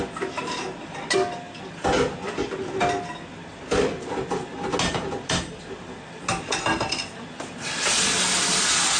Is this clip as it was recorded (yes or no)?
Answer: yes